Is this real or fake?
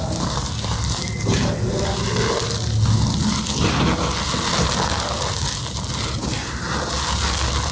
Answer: real